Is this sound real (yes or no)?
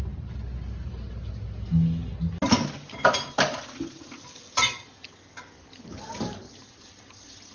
yes